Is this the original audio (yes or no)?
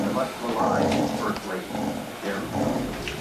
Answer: no